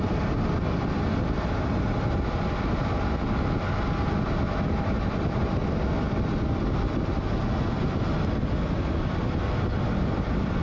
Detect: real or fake real